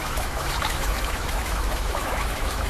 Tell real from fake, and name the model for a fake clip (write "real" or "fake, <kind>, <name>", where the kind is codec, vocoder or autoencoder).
fake, autoencoder, DAC-VAE